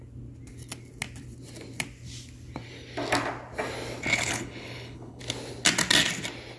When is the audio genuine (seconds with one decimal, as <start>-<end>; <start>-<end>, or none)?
0.0-4.1; 5.2-6.6